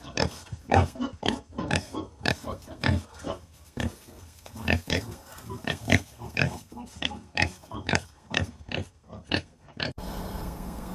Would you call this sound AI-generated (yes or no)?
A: yes